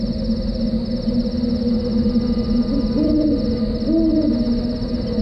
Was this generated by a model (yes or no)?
no